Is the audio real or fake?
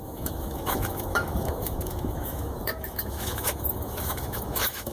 fake